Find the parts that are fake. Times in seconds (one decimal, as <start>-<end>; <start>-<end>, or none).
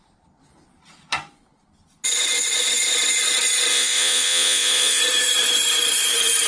3.7-5.0